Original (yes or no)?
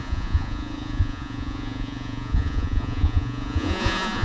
no